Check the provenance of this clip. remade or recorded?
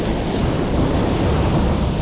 recorded